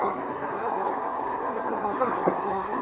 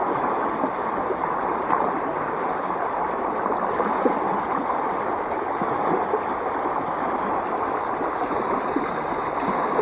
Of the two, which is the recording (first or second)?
second